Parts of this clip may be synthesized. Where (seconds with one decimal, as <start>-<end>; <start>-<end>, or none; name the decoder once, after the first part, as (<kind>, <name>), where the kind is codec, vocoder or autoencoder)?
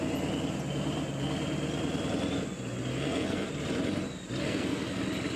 2.9-3.5 (codec, SNAC); 4.4-5.0